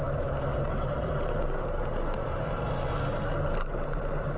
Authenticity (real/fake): fake